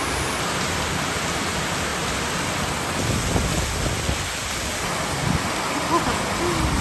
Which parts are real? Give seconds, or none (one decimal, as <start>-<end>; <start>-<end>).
0.0-6.8

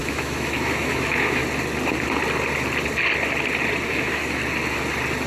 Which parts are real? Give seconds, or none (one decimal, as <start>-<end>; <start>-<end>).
1.4-3.8; 4.4-5.3